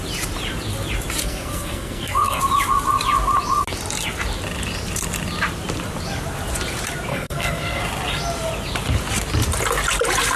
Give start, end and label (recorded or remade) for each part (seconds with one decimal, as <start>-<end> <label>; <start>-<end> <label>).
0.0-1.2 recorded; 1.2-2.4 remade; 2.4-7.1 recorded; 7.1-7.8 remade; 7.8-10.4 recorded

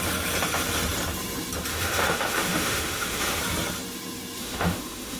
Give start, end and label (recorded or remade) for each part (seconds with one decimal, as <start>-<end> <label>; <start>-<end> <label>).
0.0-1.7 recorded; 1.7-3.4 remade; 3.4-4.4 recorded; 4.4-5.2 remade

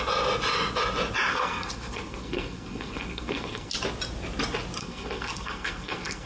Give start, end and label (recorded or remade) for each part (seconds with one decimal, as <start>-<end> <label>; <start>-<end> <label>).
0.0-1.3 recorded; 1.3-3.7 remade; 3.7-4.8 recorded; 4.8-6.3 remade

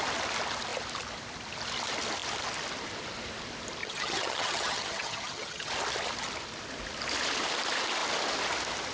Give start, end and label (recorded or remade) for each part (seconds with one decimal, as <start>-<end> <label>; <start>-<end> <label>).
0.0-3.8 recorded; 3.8-5.7 remade; 5.7-8.9 recorded